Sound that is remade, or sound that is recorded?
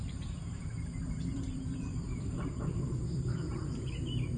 remade